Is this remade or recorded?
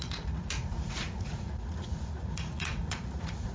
remade